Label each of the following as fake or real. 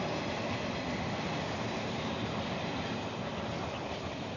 real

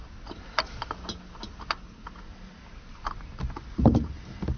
real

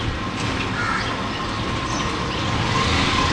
real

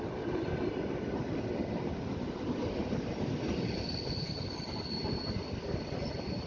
real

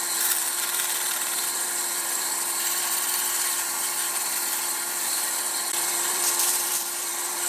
fake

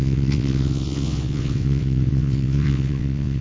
fake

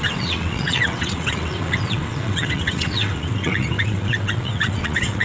fake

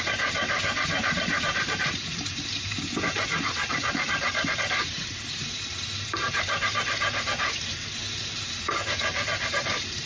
fake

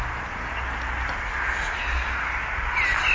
real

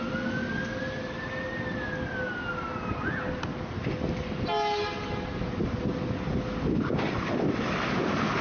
real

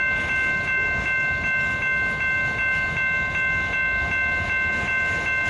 real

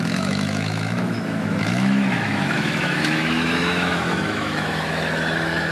fake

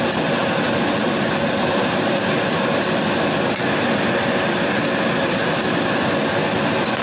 real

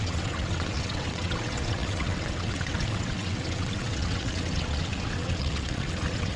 fake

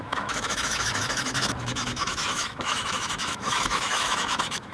fake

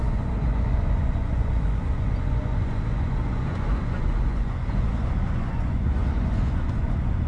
fake